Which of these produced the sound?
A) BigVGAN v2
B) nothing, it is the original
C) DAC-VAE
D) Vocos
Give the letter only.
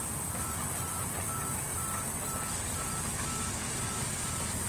B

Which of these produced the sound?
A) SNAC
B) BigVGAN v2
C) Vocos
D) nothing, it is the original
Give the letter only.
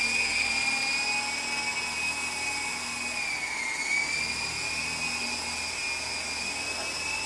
D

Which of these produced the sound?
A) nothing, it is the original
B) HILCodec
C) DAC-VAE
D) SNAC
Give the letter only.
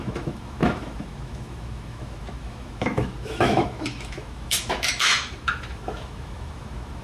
C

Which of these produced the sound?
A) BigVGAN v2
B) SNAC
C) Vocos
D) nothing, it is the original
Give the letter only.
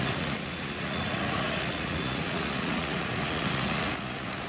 C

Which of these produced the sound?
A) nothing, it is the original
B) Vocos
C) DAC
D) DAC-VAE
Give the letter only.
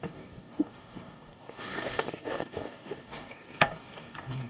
C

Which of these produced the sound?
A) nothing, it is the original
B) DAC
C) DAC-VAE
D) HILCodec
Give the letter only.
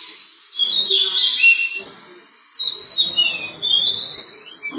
A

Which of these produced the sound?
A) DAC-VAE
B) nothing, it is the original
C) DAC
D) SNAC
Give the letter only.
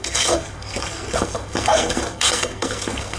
D